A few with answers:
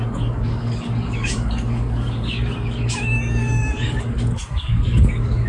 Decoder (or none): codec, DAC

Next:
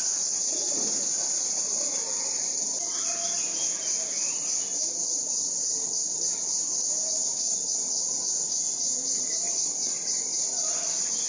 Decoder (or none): none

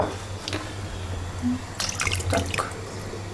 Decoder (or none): none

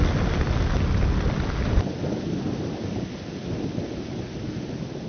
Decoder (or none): none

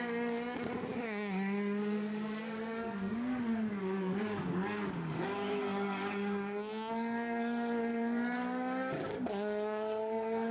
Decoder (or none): codec, DAC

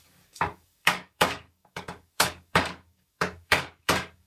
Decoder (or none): codec, DAC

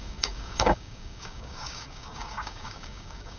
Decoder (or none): codec, DAC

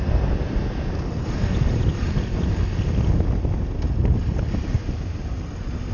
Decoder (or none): none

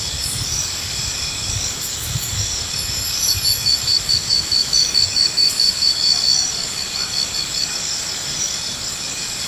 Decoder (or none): codec, DAC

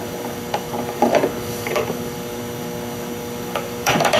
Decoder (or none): codec, DAC